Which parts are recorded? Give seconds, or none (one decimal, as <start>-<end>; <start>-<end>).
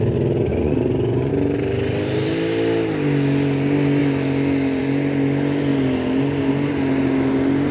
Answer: 0.0-0.5; 1.3-7.7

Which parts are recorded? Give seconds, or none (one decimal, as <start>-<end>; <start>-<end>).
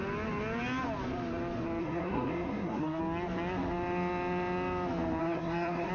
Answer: 0.0-1.8; 3.0-5.2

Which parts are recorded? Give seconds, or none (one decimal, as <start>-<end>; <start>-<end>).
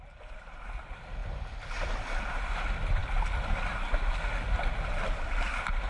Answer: 0.0-5.9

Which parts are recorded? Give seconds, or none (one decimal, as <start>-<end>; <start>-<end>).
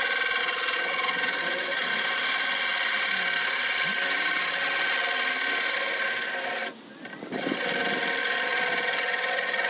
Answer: 0.0-0.4; 1.9-8.2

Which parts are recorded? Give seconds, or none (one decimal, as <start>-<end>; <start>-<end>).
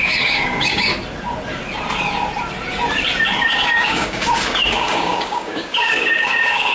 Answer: 0.9-3.4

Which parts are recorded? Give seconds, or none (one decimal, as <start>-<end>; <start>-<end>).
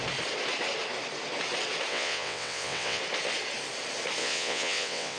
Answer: 0.0-1.9; 3.0-4.2